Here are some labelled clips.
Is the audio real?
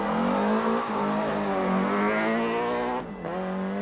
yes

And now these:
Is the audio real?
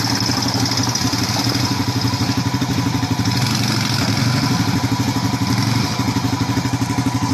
yes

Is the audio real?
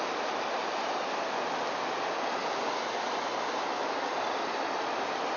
yes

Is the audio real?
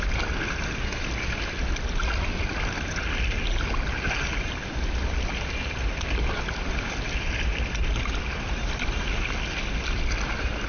yes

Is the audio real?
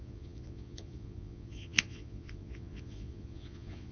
no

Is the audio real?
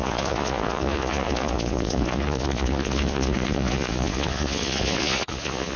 no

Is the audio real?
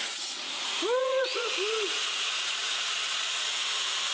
no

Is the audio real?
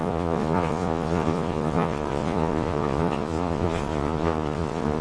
no